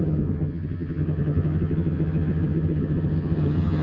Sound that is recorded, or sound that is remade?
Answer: remade